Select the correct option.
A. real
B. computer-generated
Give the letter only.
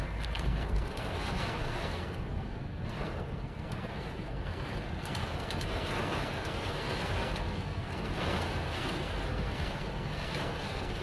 B